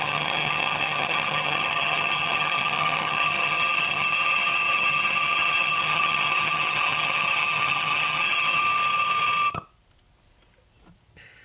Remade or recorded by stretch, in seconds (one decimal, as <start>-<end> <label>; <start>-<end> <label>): 0.0-8.6 remade; 8.6-11.4 recorded